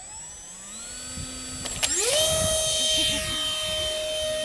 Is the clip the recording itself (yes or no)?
yes